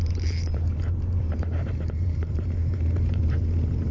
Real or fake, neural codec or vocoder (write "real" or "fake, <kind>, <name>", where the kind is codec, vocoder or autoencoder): fake, vocoder, BigVGAN v2